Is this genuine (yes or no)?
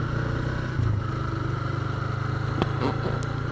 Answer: yes